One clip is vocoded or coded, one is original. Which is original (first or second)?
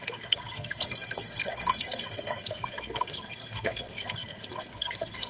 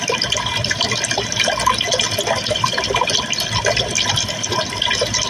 second